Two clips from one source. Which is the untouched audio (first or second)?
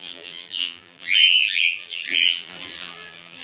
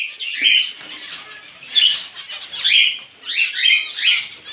second